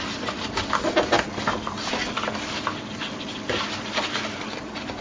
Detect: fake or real real